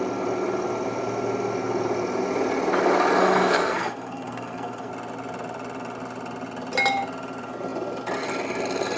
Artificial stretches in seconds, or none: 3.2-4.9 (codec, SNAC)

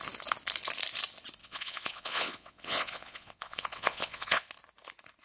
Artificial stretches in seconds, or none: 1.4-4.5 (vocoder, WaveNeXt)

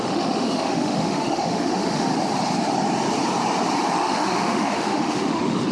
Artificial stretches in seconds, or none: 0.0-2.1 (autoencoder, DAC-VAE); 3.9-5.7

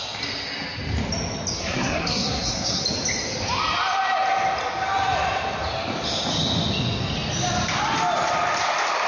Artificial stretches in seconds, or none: 1.6-2.8 (codec, SNAC)

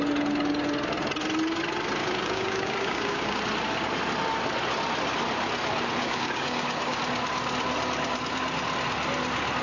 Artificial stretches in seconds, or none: 2.0-3.4 (codec, DAC); 6.0-7.0

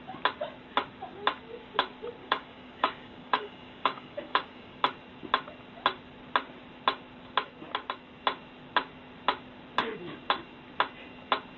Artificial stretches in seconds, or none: 2.2-4.8 (codec, DAC)

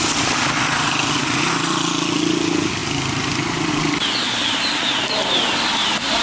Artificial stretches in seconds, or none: none

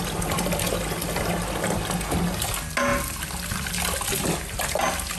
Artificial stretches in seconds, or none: none